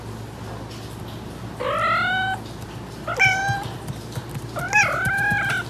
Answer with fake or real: real